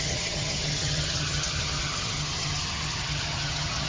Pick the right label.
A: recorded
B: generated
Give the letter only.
B